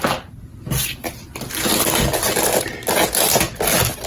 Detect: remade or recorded recorded